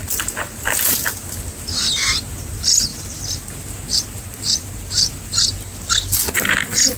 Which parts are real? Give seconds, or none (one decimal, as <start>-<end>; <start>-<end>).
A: 0.9-2.9; 5.6-7.0